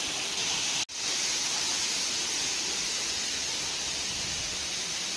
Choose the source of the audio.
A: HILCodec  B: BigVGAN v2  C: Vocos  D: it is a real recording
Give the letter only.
D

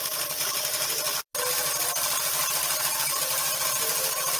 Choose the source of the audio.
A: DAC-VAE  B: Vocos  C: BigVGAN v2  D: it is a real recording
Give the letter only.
C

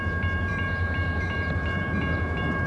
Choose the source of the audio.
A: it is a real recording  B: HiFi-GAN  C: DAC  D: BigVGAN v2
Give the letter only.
D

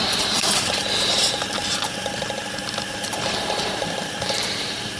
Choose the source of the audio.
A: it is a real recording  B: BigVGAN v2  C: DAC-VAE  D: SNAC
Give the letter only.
B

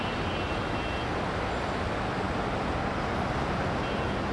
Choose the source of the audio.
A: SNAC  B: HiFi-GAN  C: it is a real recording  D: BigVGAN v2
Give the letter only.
C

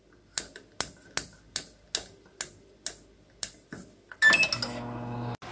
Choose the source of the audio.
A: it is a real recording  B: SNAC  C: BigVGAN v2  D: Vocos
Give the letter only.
A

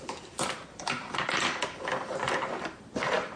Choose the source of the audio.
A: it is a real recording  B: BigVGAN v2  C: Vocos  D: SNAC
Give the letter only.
B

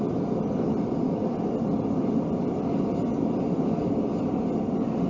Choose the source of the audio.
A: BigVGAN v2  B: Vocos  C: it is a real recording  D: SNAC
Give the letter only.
C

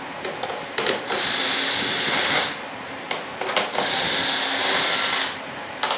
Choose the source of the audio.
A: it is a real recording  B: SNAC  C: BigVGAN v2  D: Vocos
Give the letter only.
A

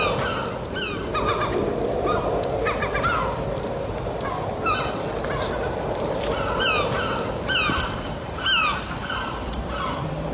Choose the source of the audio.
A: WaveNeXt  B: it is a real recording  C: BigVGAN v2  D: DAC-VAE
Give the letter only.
B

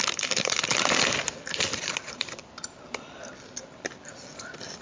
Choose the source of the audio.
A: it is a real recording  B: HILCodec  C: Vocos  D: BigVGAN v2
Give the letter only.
D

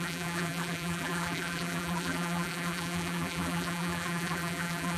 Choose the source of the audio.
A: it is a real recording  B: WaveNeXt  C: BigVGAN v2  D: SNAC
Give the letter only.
C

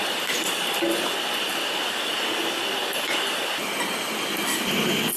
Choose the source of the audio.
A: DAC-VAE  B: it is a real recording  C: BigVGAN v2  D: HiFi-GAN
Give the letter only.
B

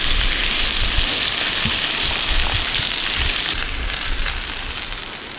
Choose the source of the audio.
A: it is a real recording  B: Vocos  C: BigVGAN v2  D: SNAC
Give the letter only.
A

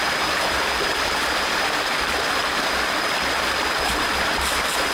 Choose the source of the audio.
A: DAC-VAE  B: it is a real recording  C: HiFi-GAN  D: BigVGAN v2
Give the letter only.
D